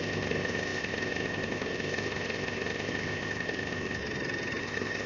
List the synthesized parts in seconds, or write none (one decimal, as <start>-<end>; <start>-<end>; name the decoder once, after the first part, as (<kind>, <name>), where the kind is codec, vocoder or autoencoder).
0.0-4.0 (codec, ZipCodec); 4.6-5.1